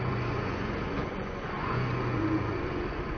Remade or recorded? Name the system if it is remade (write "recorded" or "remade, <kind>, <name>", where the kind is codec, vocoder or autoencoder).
remade, vocoder, Vocos